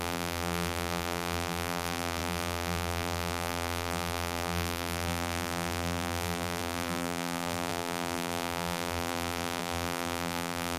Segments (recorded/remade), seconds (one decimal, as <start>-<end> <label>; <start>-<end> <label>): 0.0-10.8 remade